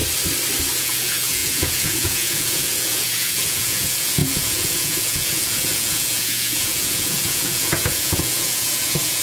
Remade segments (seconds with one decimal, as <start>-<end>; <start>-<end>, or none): 0.8-9.2